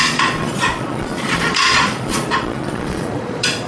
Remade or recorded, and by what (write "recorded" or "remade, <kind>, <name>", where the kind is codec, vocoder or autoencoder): remade, vocoder, Vocos